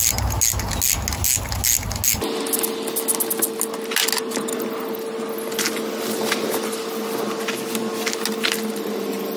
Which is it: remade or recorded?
recorded